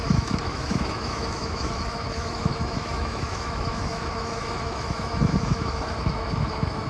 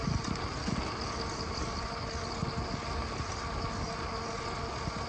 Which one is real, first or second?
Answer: second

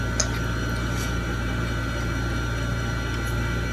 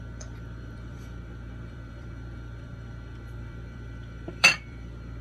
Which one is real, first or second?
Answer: first